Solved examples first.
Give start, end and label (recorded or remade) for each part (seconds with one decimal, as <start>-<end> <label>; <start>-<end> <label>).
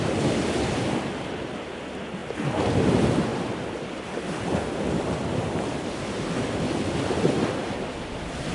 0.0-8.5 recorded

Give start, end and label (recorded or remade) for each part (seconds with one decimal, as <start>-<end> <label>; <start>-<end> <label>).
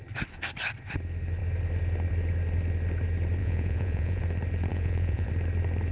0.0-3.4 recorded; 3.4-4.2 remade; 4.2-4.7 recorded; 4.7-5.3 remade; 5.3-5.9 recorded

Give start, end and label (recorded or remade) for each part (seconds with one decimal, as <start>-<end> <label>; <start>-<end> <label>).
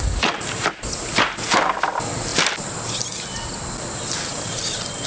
0.0-2.3 remade; 2.3-3.9 recorded; 3.9-5.1 remade